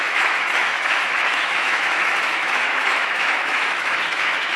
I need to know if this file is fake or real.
fake